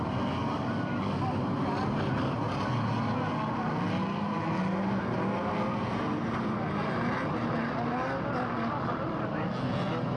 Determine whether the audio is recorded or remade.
recorded